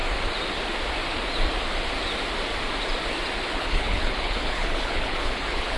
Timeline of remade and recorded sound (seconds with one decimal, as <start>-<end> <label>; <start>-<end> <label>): 0.0-3.5 recorded; 3.5-5.8 remade